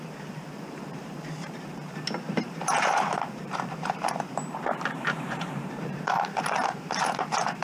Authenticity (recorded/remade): remade